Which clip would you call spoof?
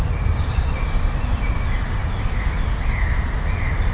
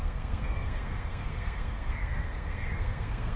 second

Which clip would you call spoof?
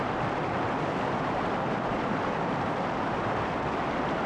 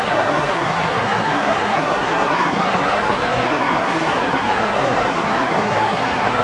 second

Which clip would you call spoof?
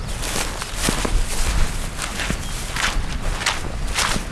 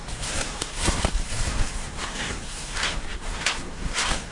second